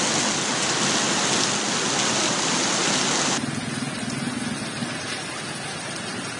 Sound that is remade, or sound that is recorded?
recorded